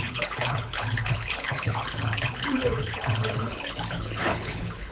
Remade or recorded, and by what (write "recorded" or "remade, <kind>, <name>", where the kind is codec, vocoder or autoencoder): remade, codec, HILCodec